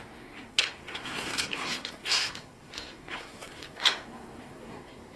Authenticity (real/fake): fake